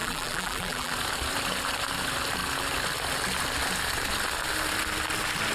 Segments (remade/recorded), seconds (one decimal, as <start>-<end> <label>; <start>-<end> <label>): 0.0-0.9 remade; 0.9-5.5 recorded